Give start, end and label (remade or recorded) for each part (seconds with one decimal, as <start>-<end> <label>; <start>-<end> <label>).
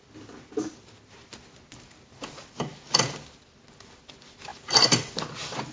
0.0-5.7 recorded